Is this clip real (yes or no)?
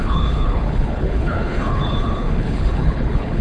no